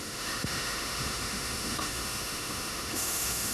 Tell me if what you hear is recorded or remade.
remade